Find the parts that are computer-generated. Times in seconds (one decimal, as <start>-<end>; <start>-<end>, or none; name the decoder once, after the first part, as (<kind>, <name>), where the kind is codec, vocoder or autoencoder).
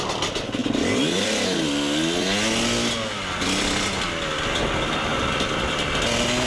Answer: 5.1-5.7 (vocoder, BigVGAN v2)